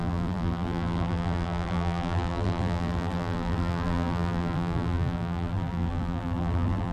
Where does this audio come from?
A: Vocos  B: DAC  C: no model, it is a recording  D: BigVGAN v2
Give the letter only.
D